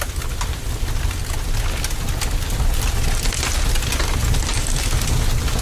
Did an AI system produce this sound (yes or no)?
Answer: no